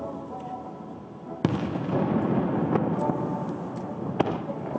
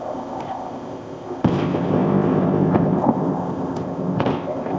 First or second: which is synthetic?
second